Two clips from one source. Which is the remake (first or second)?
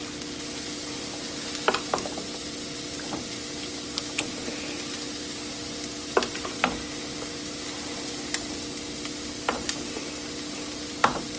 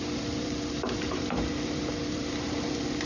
second